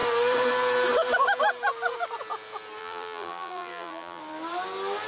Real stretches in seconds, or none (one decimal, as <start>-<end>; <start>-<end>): 0.0-2.8; 4.2-5.1